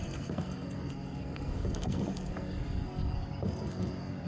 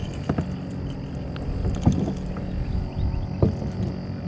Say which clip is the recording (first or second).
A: second